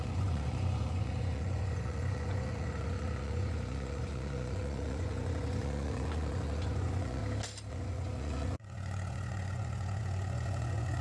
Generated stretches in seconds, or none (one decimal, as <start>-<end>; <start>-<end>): 0.0-7.2; 7.7-11.0